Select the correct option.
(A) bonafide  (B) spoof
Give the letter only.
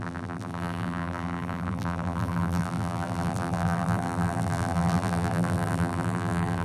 B